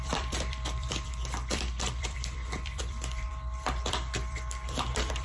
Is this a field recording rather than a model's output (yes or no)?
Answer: no